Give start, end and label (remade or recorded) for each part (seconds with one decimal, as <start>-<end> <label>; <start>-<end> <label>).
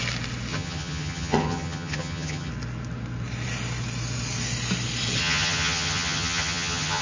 0.0-0.5 recorded; 0.5-2.5 remade; 2.5-5.2 recorded; 5.2-7.0 remade